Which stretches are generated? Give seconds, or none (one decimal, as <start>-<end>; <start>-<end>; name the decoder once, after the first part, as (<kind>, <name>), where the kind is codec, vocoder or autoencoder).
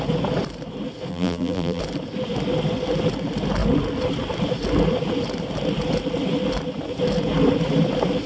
1.1-1.8 (vocoder, BigVGAN v2)